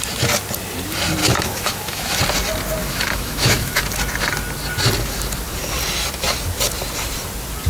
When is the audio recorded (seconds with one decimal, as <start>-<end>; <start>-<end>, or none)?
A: 0.0-1.2; 2.2-2.8; 3.8-7.7